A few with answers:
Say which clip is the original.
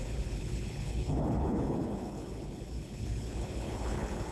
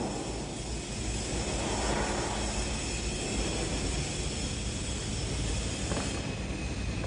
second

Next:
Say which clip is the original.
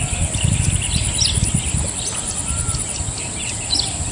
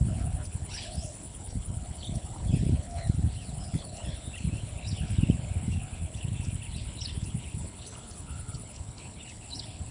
first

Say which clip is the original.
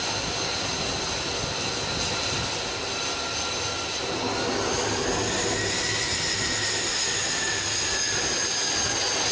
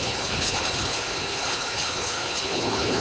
first